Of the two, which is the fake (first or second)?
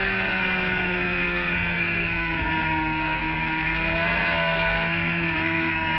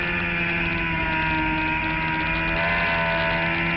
first